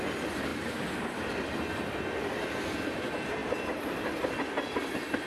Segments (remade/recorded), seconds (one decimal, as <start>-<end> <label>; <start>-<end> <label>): 0.0-5.3 remade